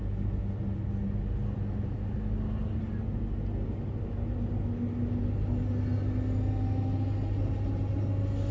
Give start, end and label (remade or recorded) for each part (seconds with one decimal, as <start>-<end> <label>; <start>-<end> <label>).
0.0-8.5 recorded